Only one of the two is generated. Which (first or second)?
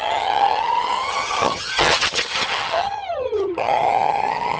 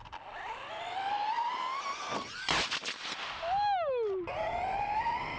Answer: first